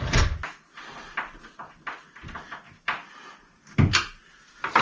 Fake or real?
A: real